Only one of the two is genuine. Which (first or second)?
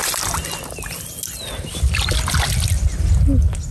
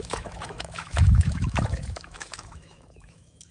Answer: first